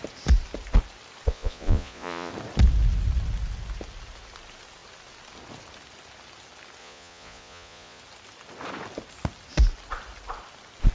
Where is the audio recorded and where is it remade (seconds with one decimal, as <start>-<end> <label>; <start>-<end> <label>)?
0.0-1.3 recorded; 1.3-2.3 remade; 2.3-6.8 recorded; 6.8-8.0 remade; 8.0-10.9 recorded